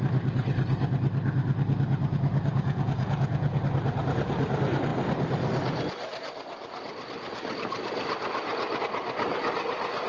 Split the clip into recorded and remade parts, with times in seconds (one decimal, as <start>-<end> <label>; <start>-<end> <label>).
0.0-2.5 recorded; 2.5-3.6 remade; 3.6-10.1 recorded